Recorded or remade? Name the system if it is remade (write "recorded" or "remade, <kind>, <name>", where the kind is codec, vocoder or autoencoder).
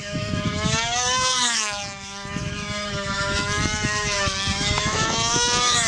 remade, autoencoder, DAC-VAE